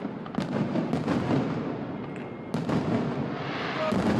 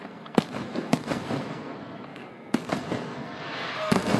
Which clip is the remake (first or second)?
second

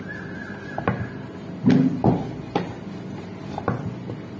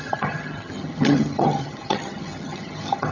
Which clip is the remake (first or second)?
second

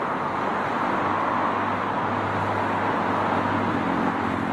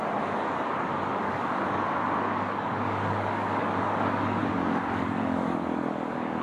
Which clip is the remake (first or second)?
second